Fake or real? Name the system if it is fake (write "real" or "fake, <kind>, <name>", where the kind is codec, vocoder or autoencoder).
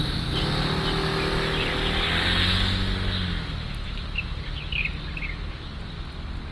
real